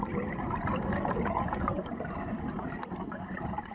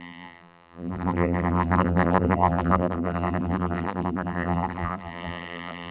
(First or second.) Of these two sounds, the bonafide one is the first